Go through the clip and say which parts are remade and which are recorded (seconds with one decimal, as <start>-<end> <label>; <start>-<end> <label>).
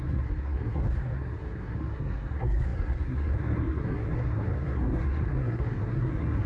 0.0-6.5 remade